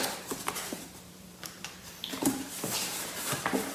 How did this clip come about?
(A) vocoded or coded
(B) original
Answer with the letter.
A